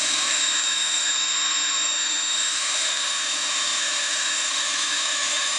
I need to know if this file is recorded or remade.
remade